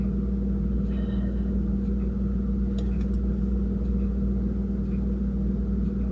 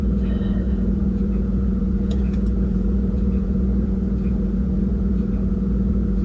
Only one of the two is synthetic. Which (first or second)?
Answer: second